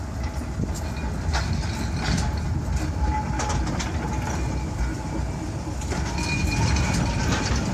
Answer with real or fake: real